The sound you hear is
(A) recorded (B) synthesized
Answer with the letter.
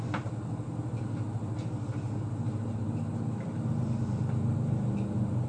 A